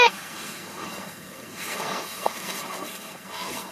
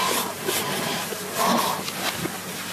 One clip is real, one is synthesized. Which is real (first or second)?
second